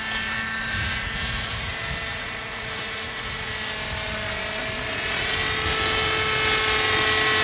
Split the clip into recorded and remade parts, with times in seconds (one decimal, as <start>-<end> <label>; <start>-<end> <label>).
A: 0.0-0.7 recorded; 0.7-1.7 remade; 1.7-2.1 recorded; 2.1-3.5 remade; 3.5-4.9 recorded; 4.9-5.4 remade; 5.4-7.4 recorded